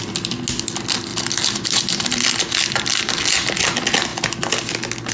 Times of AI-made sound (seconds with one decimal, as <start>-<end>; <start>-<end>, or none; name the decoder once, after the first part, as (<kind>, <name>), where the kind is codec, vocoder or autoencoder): none